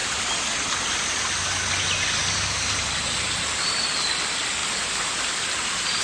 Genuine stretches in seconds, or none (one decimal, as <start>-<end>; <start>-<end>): 0.0-6.0